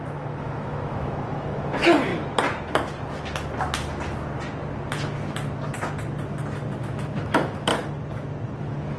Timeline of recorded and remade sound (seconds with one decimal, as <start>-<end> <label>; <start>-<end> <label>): 0.0-2.1 remade; 2.1-6.8 recorded; 6.8-7.7 remade; 7.7-8.6 recorded; 8.6-9.0 remade